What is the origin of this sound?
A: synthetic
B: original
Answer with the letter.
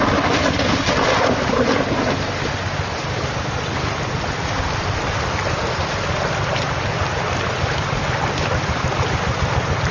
B